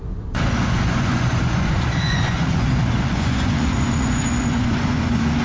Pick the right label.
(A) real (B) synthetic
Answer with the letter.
B